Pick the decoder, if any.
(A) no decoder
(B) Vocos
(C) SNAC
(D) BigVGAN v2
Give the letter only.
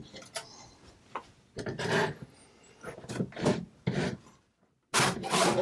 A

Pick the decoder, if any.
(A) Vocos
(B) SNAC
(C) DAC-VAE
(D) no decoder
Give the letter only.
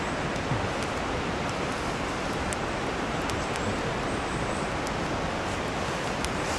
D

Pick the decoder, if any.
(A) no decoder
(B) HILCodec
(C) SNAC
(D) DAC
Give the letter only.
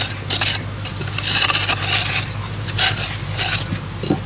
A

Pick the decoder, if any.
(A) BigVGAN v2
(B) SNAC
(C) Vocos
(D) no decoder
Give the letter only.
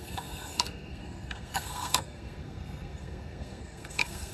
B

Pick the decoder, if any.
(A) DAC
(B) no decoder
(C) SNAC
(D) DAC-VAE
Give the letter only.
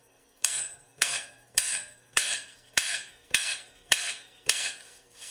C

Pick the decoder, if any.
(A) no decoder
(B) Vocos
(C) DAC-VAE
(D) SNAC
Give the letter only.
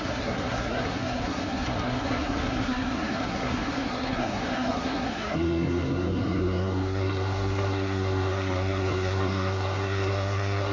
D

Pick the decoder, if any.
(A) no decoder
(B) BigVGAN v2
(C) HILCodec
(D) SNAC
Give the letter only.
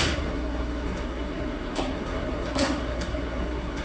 D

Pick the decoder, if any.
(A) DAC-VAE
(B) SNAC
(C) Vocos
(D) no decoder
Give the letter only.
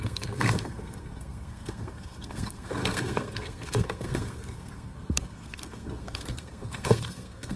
B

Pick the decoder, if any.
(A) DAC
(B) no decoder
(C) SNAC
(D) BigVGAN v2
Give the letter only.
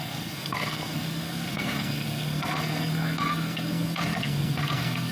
C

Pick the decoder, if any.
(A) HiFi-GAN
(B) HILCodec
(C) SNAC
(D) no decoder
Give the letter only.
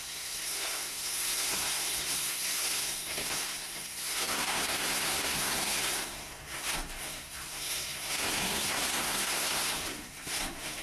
C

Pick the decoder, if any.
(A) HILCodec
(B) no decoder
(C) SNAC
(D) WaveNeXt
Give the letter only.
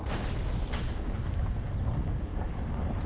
B